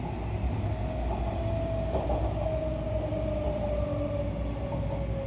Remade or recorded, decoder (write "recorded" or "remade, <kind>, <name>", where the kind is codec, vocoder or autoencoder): recorded